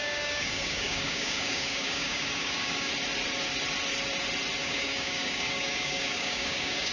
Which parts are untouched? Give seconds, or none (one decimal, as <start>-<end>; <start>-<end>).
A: 2.9-4.6